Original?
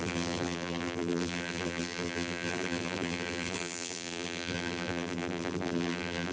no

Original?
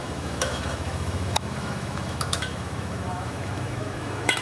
no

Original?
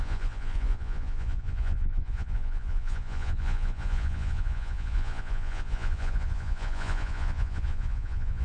no